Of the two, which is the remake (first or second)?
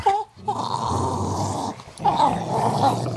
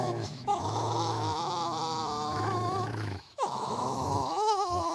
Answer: second